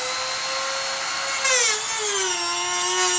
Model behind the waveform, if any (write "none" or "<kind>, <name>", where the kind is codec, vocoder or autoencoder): none